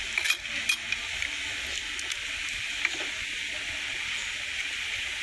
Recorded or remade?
recorded